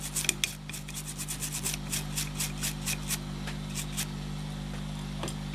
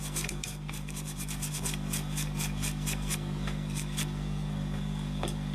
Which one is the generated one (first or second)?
second